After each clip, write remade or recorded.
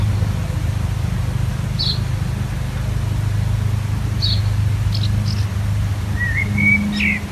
recorded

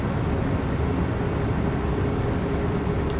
recorded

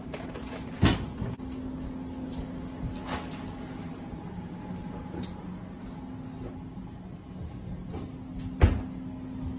recorded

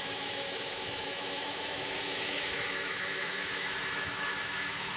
remade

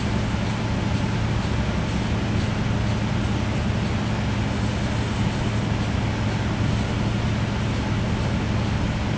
recorded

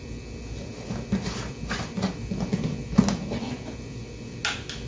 recorded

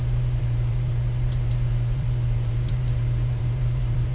remade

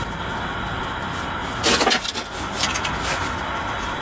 recorded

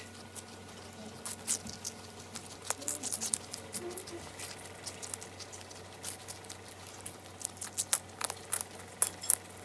recorded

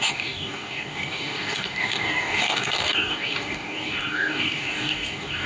remade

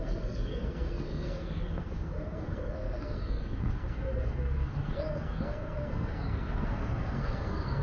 remade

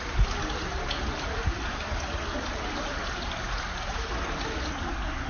recorded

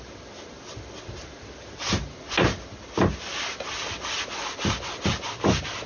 recorded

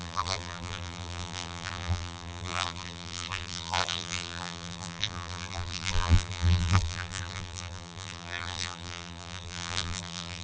remade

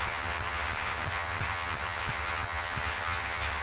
remade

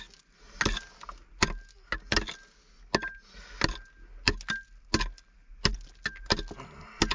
recorded